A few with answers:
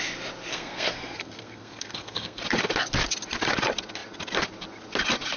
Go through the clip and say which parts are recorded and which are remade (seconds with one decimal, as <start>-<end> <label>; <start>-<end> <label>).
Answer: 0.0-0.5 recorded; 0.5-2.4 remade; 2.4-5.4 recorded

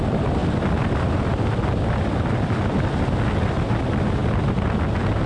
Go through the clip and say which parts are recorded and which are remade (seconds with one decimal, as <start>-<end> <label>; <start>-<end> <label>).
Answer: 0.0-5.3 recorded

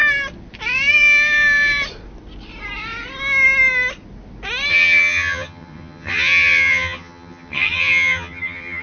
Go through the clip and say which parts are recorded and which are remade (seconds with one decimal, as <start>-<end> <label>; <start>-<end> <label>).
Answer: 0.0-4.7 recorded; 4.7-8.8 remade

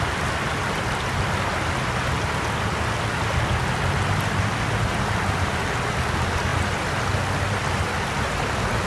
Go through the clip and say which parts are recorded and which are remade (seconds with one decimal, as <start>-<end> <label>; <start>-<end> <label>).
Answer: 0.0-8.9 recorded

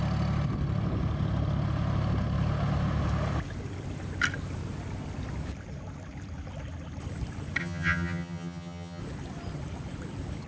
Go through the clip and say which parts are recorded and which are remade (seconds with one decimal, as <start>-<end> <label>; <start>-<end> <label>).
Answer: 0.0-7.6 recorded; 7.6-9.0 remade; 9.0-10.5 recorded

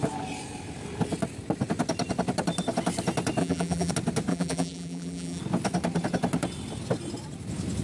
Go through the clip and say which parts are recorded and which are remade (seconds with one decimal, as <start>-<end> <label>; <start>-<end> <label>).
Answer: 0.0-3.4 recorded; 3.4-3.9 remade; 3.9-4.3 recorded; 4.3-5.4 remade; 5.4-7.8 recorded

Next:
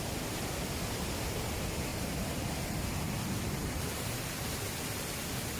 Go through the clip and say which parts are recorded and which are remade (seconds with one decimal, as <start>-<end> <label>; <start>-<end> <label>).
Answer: 0.0-5.6 recorded